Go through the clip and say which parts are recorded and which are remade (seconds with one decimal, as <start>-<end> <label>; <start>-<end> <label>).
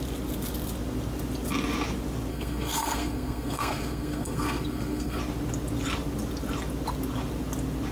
0.0-2.3 recorded; 2.3-5.2 remade; 5.2-7.9 recorded